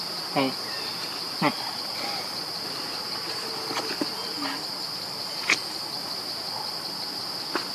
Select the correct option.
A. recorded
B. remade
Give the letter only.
A